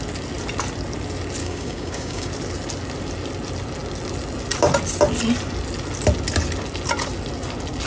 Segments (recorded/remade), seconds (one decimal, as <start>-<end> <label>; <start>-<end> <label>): 0.0-1.4 recorded; 1.4-2.3 remade; 2.3-7.9 recorded